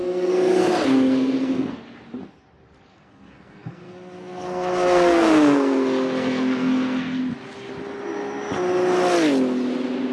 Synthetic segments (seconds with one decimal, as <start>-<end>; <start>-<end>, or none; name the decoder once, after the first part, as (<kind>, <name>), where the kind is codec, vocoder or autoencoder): 0.0-1.8 (codec, SNAC); 2.9-7.2